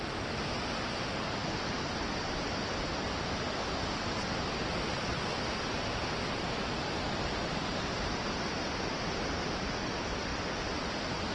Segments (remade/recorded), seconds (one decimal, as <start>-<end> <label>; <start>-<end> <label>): 0.0-11.3 recorded